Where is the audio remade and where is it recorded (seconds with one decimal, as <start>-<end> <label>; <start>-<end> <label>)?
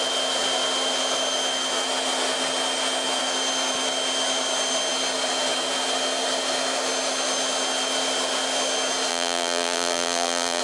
0.0-9.1 recorded; 9.1-10.6 remade